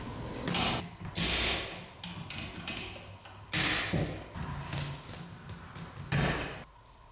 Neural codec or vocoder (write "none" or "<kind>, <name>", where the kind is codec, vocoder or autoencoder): none